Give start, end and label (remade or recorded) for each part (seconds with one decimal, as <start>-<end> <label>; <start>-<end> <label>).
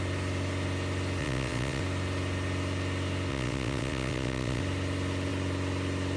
0.0-1.2 recorded; 1.2-1.8 remade; 1.8-3.3 recorded; 3.3-4.6 remade; 4.6-6.2 recorded